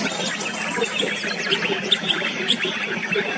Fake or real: real